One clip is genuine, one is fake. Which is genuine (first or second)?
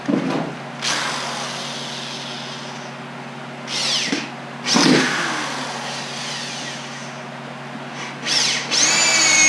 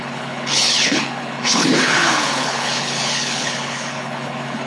first